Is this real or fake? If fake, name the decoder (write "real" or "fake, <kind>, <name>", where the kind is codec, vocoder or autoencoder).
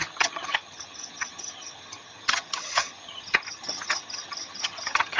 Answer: fake, vocoder, HiFi-GAN